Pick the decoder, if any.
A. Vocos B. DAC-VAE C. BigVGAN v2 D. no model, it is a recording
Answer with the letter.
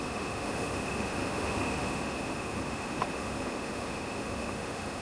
B